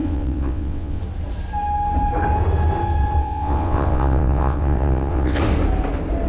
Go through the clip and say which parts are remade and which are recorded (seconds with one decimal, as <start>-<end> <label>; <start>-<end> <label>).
0.0-1.0 remade; 1.0-3.2 recorded; 3.2-5.4 remade; 5.4-6.3 recorded